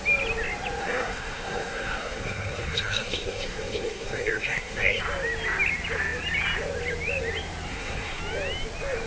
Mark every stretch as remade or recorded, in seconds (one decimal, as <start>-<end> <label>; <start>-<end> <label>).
0.0-0.8 recorded; 0.8-5.0 remade; 5.0-7.7 recorded; 7.7-8.2 remade; 8.2-9.1 recorded